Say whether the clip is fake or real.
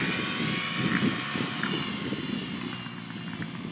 real